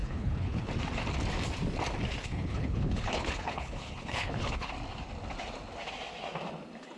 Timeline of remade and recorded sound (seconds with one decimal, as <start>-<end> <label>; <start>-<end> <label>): 0.0-0.7 remade; 0.7-2.2 recorded; 2.2-4.7 remade; 4.7-7.0 recorded